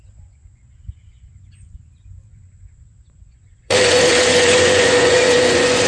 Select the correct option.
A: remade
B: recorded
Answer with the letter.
A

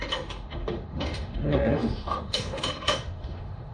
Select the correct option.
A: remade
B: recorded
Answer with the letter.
A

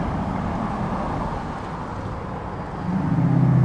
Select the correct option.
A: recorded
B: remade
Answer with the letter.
A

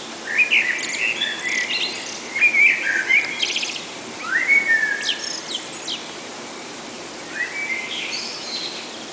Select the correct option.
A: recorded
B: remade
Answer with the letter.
A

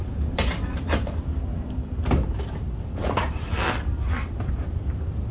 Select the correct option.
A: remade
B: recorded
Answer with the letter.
B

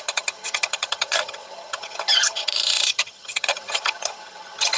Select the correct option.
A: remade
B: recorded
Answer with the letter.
A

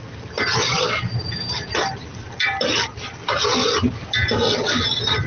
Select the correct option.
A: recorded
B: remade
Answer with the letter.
A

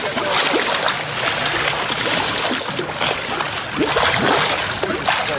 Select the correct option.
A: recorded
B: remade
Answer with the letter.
A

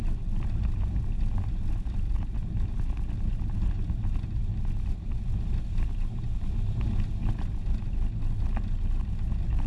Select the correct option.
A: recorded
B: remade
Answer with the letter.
A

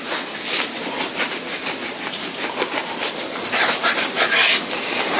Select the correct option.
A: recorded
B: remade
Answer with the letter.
A